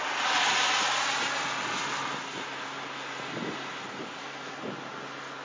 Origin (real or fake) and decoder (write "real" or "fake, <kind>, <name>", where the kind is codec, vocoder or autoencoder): real